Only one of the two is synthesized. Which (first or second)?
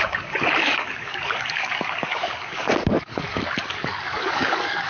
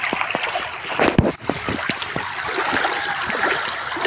first